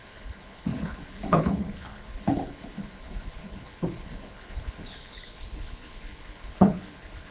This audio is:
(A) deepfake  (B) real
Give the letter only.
A